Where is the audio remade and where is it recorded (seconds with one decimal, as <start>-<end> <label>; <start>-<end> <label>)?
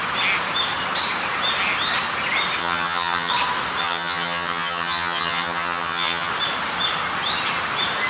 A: 0.0-2.6 recorded; 2.6-3.3 remade; 3.3-3.8 recorded; 3.8-6.3 remade; 6.3-8.1 recorded